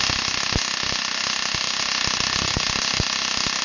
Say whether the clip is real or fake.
real